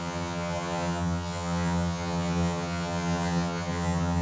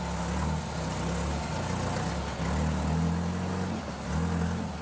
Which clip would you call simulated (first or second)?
first